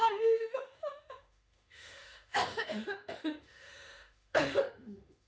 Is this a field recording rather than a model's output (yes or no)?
no